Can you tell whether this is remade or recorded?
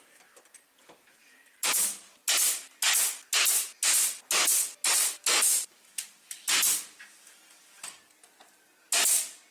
recorded